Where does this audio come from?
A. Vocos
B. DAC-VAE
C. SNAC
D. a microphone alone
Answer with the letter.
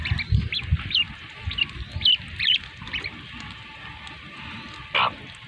D